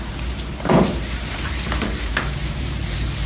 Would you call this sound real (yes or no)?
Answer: no